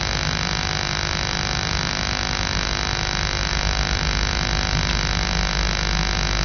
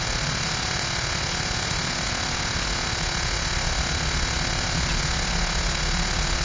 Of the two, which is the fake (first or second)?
second